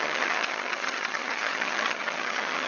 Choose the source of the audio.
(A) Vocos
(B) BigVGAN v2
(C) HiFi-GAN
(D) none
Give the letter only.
C